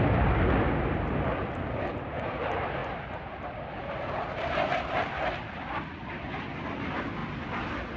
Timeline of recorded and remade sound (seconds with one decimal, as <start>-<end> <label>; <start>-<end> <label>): 0.0-8.0 recorded